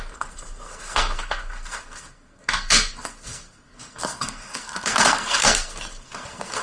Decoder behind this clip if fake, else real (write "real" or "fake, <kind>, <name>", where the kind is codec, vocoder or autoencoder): fake, codec, SNAC